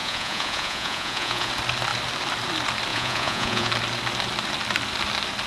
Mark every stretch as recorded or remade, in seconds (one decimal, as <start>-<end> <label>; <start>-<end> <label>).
0.0-1.5 remade; 1.5-2.9 recorded; 2.9-3.7 remade; 3.7-5.5 recorded